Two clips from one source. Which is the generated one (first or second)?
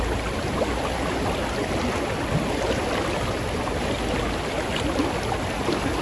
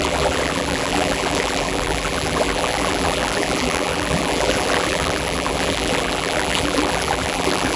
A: second